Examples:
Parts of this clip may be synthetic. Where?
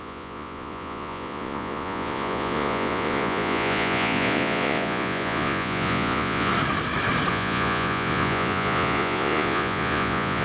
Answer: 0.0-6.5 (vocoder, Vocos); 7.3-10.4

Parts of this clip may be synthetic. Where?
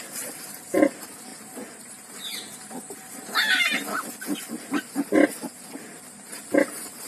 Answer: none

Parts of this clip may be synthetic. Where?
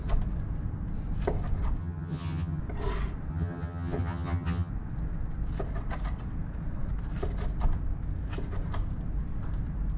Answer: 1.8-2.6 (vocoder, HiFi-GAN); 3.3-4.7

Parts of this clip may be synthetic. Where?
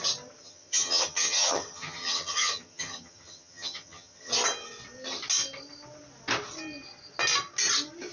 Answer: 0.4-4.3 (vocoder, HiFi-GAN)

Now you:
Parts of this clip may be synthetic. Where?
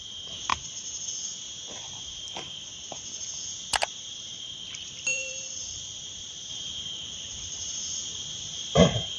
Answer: 5.1-8.7 (vocoder, BigVGAN v2)